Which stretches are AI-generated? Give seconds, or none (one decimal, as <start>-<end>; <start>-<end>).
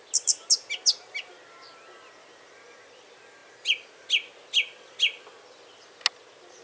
none